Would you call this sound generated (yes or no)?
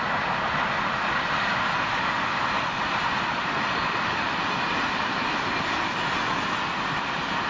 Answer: no